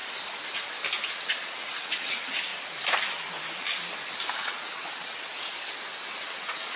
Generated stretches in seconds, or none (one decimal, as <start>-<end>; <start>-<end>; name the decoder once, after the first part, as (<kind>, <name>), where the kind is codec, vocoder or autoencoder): 1.1-2.5 (vocoder, WaveNeXt); 4.3-5.3; 6.2-6.8